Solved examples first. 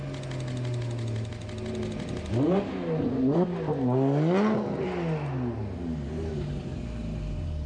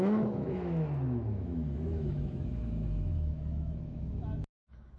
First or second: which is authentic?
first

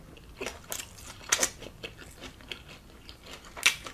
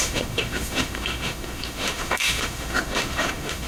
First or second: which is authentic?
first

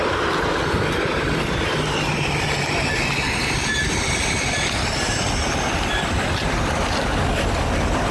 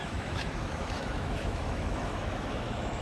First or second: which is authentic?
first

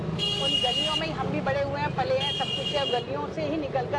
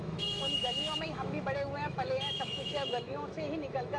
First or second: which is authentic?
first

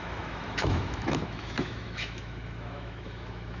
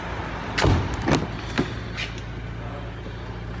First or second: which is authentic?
second